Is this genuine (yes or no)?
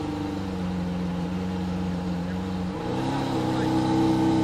yes